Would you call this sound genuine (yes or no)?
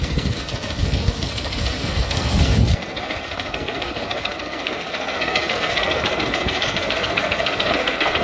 no